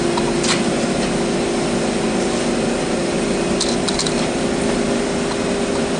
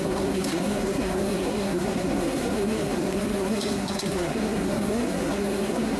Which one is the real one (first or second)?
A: first